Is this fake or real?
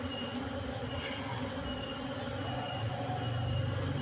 real